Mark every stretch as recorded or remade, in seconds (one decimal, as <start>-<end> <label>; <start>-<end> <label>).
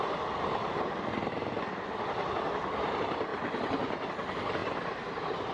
0.0-4.6 recorded; 4.6-5.5 remade